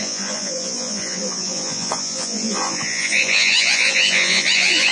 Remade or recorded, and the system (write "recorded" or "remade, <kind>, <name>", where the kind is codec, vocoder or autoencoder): remade, vocoder, Vocos